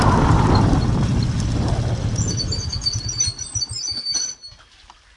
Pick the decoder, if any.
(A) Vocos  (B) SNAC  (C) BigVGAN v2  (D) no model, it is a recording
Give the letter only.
D